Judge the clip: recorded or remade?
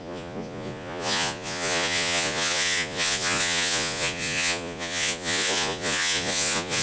remade